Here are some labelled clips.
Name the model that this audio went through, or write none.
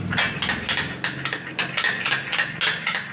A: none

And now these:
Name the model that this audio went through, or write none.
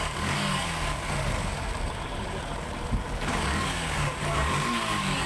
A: codec, DAC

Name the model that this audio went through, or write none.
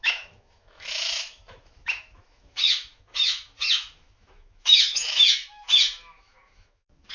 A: autoencoder, DAC-VAE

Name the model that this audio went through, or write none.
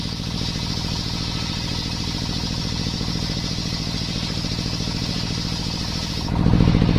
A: none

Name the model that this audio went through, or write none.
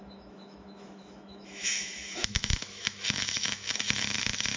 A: autoencoder, DAC-VAE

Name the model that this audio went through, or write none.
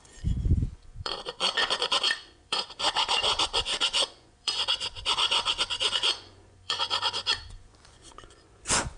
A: vocoder, Vocos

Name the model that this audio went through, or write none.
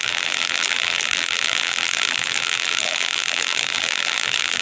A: vocoder, BigVGAN v2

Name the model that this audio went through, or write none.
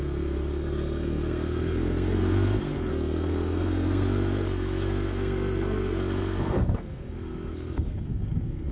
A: codec, SNAC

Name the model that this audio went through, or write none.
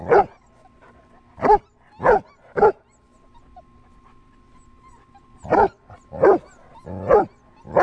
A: none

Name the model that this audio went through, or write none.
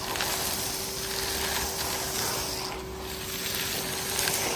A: none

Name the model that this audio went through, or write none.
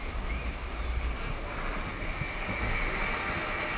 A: none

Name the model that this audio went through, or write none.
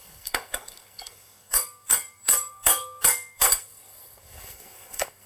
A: codec, SNAC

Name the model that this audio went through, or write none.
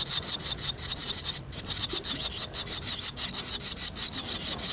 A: none